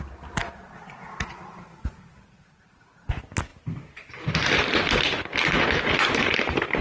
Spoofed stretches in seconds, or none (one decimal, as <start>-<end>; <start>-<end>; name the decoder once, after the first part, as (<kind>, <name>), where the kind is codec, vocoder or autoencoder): none